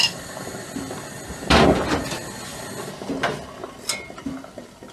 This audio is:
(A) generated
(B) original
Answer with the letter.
B